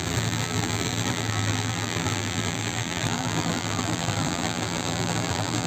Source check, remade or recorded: remade